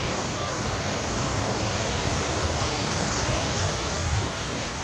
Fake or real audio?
fake